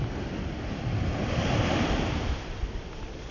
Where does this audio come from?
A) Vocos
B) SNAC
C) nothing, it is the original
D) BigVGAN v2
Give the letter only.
D